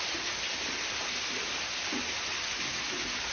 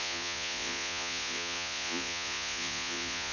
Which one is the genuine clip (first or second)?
first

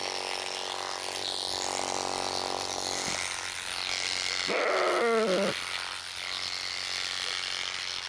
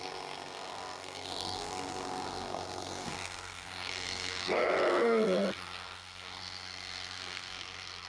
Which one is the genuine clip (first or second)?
first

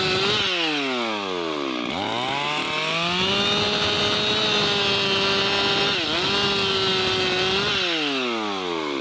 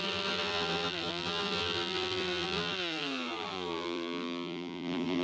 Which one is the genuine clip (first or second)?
first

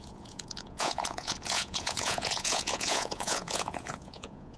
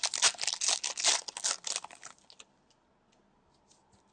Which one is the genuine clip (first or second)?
second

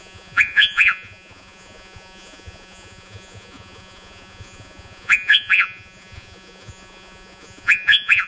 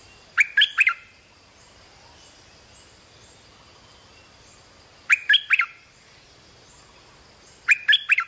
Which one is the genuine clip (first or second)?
second